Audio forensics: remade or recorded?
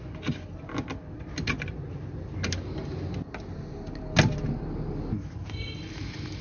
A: recorded